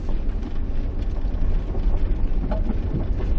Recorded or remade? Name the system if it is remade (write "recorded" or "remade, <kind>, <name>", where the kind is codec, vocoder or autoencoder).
recorded